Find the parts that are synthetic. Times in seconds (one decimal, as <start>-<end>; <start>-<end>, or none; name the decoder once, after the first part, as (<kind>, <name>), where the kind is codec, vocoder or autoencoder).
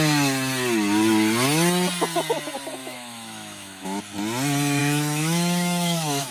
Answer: 2.8-4.0 (autoencoder, DAC-VAE); 4.8-6.3